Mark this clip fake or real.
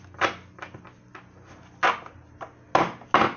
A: real